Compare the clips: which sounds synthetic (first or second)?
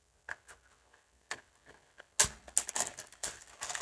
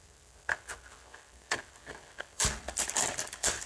second